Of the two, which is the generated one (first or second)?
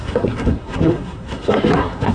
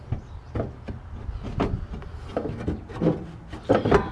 first